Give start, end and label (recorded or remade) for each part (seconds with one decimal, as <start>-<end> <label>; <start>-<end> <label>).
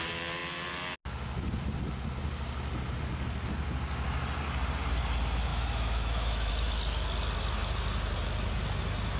0.0-5.5 recorded; 5.5-6.5 remade; 6.5-9.2 recorded